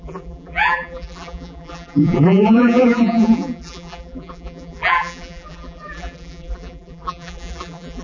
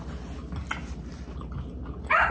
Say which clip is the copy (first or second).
first